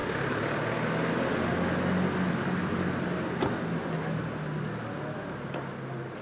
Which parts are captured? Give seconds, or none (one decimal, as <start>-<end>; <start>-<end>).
0.0-6.2